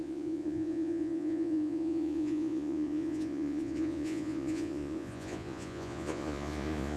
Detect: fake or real fake